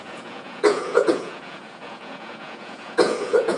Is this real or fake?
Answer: fake